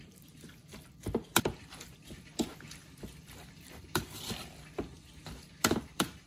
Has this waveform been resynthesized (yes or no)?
yes